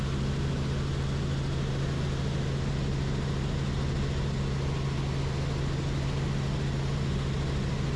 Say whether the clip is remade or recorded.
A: recorded